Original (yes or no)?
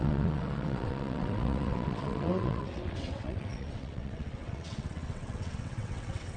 no